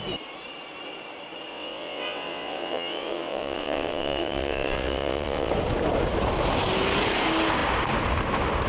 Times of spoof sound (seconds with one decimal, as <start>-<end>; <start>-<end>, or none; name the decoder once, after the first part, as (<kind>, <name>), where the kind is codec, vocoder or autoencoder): 1.5-5.5 (vocoder, WaveNeXt)